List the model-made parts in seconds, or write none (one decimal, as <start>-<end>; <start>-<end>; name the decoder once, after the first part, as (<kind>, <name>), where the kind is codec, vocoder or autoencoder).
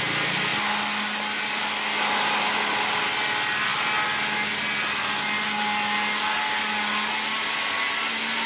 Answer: none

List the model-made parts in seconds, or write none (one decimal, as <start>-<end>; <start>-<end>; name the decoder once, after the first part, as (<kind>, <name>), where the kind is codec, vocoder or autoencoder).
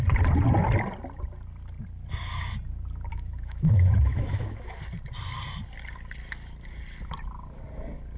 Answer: 3.1-4.8 (autoencoder, DAC-VAE)